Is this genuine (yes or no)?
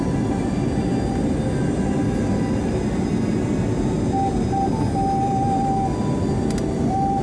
yes